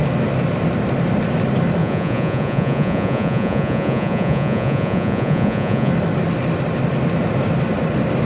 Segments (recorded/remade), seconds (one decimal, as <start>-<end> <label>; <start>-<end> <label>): 0.0-1.8 recorded; 1.8-5.9 remade; 5.9-8.3 recorded